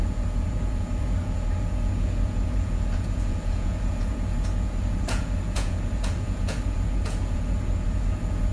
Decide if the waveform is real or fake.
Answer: fake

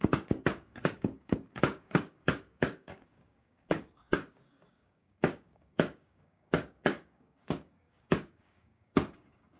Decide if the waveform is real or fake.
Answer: fake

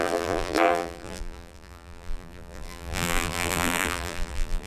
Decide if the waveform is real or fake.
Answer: fake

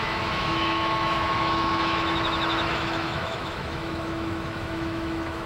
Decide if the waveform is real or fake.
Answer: fake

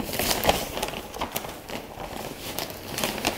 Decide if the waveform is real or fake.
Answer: real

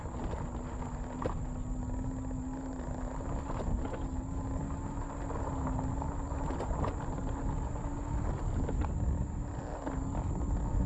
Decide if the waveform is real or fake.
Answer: real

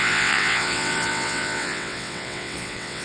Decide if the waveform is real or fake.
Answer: fake